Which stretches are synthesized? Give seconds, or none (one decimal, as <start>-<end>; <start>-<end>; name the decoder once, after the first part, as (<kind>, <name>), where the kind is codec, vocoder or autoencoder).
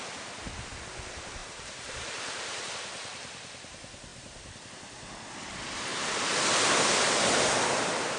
1.4-2.7 (vocoder, BigVGAN v2); 4.1-4.7